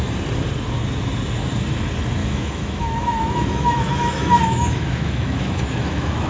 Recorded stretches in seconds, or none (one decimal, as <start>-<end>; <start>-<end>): 0.0-2.2